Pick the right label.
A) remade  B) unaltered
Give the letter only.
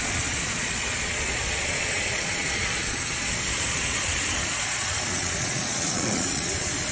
A